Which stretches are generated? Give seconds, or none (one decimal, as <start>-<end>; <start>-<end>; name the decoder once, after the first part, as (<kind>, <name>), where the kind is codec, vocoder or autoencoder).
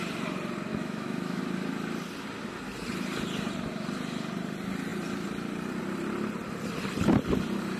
0.7-1.4 (autoencoder, DAC-VAE)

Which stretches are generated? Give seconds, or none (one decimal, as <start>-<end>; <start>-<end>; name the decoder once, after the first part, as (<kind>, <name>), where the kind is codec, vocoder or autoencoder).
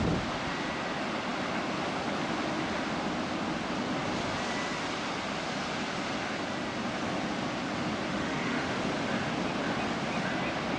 8.1-8.7 (autoencoder, DAC-VAE)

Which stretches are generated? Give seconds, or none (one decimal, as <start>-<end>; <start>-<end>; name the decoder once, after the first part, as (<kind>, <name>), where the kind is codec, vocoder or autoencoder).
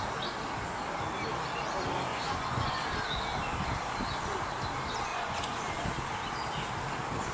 2.1-2.8 (vocoder, Vocos); 5.1-5.7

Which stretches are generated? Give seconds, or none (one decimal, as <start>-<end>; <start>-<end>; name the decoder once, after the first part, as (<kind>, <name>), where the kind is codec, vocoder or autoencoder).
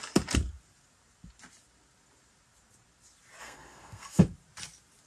3.4-4.2 (codec, SNAC)